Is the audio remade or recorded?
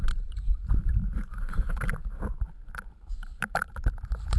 remade